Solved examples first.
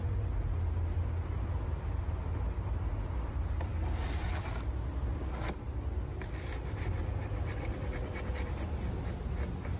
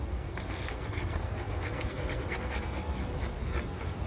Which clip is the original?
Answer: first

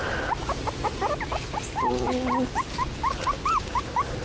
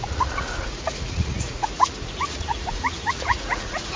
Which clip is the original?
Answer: first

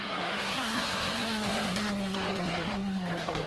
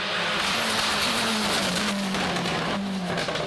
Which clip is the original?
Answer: second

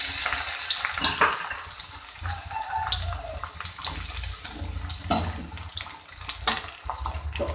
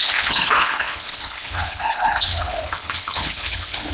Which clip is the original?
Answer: first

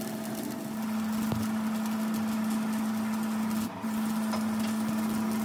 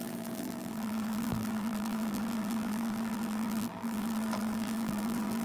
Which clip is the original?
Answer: first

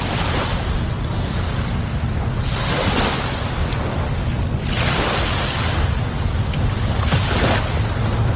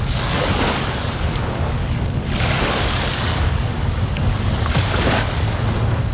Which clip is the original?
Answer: first